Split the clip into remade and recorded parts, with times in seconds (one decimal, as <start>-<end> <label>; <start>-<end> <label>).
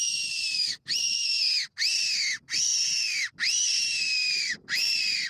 0.0-1.2 remade; 1.2-4.3 recorded; 4.3-5.3 remade